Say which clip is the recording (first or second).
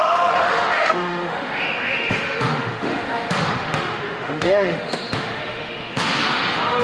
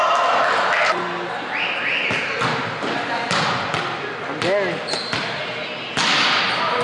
second